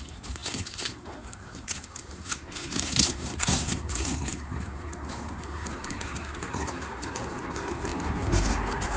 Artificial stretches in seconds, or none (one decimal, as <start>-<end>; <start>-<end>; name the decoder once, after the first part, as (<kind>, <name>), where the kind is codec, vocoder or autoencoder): 0.0-9.0 (codec, SNAC)